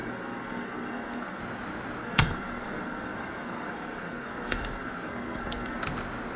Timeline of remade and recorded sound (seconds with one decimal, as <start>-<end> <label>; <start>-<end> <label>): 0.0-1.4 remade; 1.4-2.0 recorded; 2.0-5.8 remade; 5.8-6.4 recorded